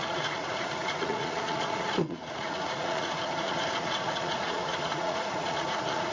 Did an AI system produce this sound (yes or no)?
yes